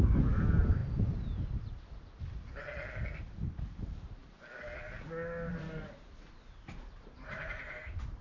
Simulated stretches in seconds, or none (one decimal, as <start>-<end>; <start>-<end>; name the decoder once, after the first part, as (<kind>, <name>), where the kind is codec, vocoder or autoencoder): 0.0-0.8 (vocoder, BigVGAN v2); 3.2-4.2; 6.3-8.2